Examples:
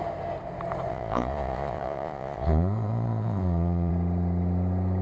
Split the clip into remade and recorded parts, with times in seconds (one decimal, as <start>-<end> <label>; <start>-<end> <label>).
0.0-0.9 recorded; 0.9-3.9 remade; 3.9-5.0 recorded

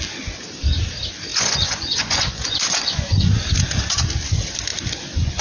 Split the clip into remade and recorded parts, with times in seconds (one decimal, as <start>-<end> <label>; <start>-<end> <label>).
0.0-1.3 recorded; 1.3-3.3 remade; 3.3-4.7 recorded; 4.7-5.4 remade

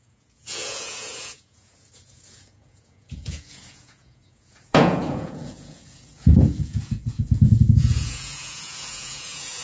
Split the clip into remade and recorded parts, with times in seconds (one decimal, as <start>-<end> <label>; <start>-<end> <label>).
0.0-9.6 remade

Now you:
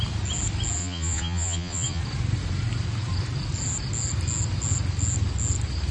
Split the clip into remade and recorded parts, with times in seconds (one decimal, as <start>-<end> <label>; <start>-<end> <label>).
0.0-0.8 recorded; 0.8-2.0 remade; 2.0-5.9 recorded